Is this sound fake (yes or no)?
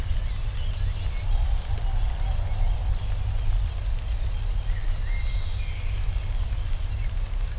no